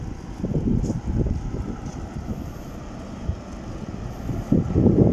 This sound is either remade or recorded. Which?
recorded